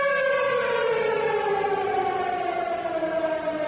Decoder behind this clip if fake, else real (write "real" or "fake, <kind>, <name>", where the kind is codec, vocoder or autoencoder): real